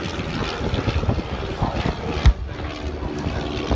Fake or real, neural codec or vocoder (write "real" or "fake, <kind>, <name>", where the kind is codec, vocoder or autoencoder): real